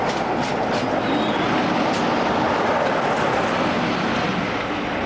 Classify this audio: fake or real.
real